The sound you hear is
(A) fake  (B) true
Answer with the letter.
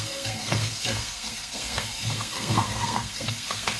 A